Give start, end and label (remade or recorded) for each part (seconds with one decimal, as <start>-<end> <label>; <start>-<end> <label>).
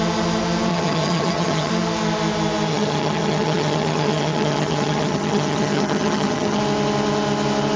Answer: 0.0-0.7 recorded; 0.7-1.7 remade; 1.7-2.7 recorded; 2.7-6.6 remade; 6.6-7.8 recorded